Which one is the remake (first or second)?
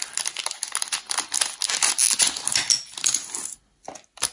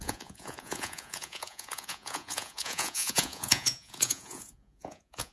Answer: second